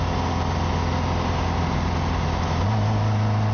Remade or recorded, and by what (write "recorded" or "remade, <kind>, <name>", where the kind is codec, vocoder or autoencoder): recorded